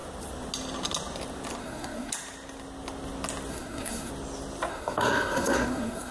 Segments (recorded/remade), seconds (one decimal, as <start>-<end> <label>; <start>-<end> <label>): 0.0-1.6 recorded; 1.6-2.1 remade; 2.1-3.5 recorded; 3.5-4.1 remade; 4.1-4.7 recorded; 4.7-6.1 remade